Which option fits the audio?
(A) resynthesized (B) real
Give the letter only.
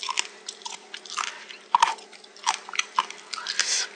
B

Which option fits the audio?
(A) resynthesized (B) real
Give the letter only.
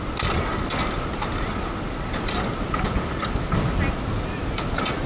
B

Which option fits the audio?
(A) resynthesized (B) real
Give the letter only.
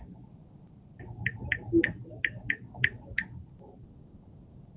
B